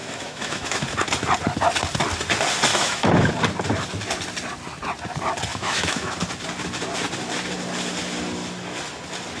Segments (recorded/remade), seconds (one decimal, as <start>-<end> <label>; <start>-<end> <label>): 0.0-0.8 remade; 0.8-2.7 recorded; 2.7-3.3 remade; 3.3-5.5 recorded; 5.5-6.1 remade; 6.1-9.4 recorded